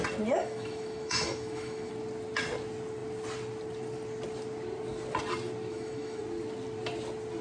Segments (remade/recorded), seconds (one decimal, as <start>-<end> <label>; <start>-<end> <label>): 0.0-0.4 recorded; 0.4-1.9 remade; 1.9-5.7 recorded; 5.7-6.2 remade; 6.2-7.4 recorded